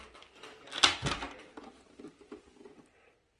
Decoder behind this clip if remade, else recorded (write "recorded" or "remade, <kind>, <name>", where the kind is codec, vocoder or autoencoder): recorded